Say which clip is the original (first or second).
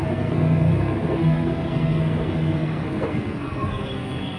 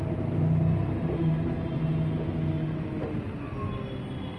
second